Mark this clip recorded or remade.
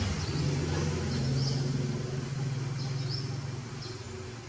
recorded